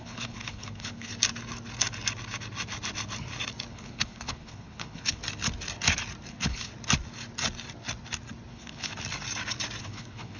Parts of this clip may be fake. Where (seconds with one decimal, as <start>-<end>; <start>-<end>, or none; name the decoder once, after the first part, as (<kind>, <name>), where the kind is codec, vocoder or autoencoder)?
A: 0.0-1.1 (codec, HILCodec); 3.7-5.2; 6.3-6.7; 8.5-8.9; 9.8-10.4